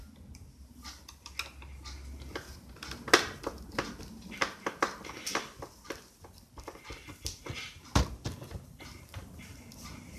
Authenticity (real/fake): real